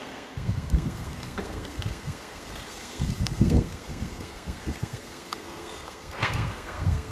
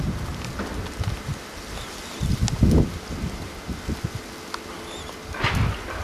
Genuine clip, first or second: second